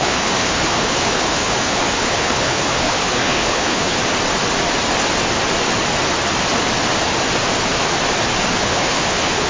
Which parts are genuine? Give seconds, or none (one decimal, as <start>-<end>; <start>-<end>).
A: 4.0-8.5